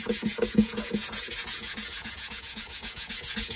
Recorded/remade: remade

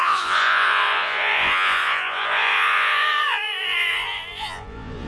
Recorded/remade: remade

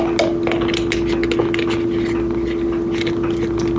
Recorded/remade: recorded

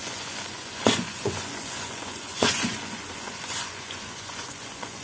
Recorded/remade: remade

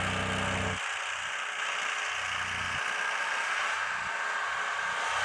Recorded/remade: recorded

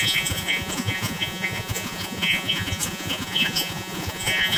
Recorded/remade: remade